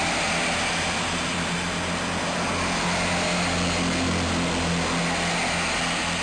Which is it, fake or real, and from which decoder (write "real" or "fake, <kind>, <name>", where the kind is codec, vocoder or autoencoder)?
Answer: real